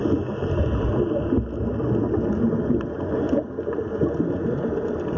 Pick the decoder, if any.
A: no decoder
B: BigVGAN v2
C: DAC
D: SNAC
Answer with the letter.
A